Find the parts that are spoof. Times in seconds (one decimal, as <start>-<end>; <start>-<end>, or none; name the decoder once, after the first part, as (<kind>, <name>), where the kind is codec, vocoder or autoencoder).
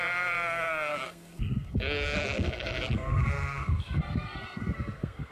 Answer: 0.0-5.3 (codec, SNAC)